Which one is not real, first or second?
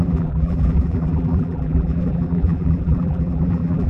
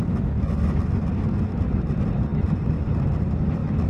first